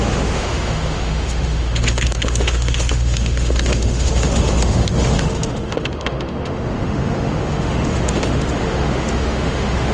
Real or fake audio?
fake